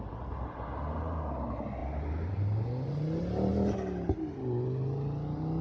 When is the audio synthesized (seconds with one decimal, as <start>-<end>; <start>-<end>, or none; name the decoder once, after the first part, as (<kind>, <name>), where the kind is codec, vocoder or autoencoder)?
none